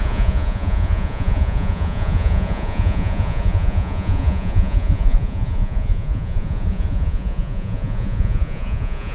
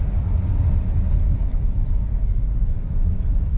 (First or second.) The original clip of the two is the second